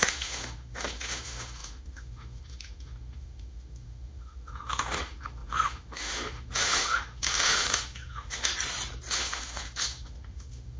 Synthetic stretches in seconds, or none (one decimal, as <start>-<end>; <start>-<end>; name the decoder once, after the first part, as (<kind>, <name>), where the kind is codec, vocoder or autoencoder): 0.0-8.5 (autoencoder, DAC-VAE); 9.1-10.8